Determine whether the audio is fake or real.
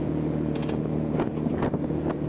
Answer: fake